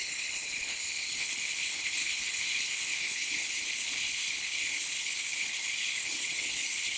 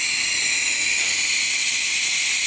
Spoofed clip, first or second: first